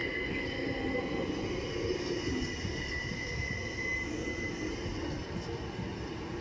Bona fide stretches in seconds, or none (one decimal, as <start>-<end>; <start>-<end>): 0.0-6.4

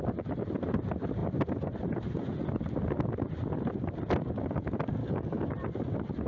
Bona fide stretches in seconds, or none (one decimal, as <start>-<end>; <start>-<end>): 0.0-5.0; 5.5-6.3

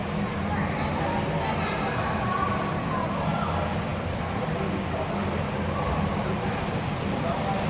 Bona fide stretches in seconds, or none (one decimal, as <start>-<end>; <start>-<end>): 0.0-7.7

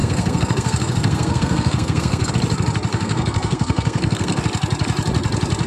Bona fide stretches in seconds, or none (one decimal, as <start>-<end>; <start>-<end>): 2.3-2.9; 4.4-5.7

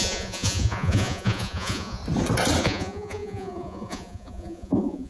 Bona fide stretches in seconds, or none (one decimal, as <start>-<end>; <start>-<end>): 2.0-2.6